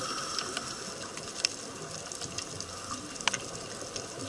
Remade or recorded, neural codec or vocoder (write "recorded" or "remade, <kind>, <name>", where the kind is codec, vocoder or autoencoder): recorded